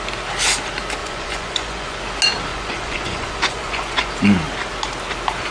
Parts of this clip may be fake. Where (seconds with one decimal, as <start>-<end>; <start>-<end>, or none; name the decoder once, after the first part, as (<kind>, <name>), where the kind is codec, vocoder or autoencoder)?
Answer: 1.0-2.0 (vocoder, Vocos); 2.5-4.1